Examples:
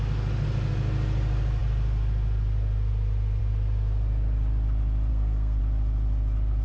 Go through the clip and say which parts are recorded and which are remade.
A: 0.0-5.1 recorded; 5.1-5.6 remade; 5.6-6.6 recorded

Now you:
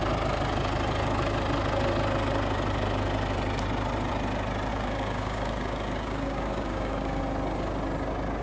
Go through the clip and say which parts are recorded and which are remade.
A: 0.0-4.7 recorded; 4.7-7.2 remade; 7.2-8.4 recorded

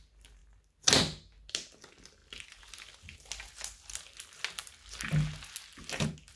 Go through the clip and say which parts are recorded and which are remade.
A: 0.0-6.4 recorded